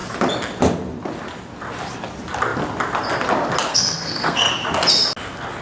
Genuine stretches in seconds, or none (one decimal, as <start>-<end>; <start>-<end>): 0.0-3.7; 4.5-5.6